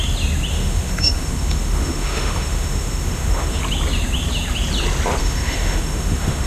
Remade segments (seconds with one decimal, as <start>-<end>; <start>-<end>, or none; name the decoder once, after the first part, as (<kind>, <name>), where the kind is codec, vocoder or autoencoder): 0.5-3.6 (autoencoder, DAC-VAE); 5.2-6.5